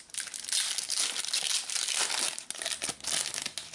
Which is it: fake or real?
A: real